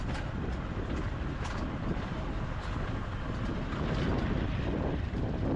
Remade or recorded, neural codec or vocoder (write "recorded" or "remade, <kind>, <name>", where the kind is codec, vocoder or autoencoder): recorded